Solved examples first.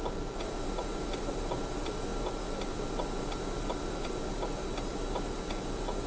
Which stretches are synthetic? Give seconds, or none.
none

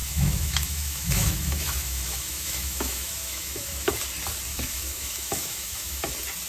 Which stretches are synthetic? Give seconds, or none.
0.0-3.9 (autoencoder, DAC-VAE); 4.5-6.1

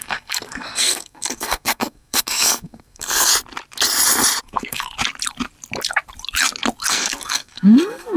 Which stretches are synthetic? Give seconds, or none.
0.0-3.3 (codec, SNAC); 4.4-4.9; 6.9-8.2

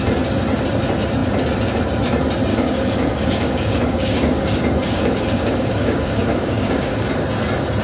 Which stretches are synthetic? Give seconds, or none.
2.5-7.1 (codec, DAC)

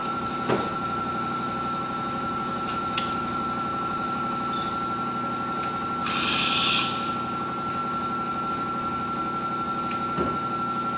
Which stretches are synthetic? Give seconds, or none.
0.0-4.7 (vocoder, BigVGAN v2); 6.0-7.1